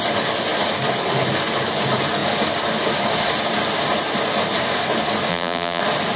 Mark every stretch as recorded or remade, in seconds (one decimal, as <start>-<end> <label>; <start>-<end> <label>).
0.0-5.3 recorded; 5.3-5.8 remade; 5.8-6.2 recorded